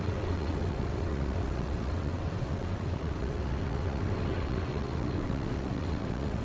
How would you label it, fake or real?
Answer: fake